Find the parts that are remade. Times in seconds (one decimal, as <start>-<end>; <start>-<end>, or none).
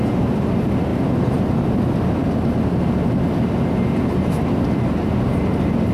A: none